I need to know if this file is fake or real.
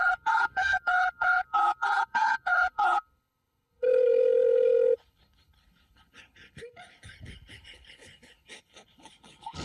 fake